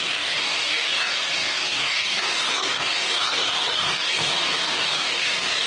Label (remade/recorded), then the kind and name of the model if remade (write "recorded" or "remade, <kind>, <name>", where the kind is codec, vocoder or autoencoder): remade, codec, DAC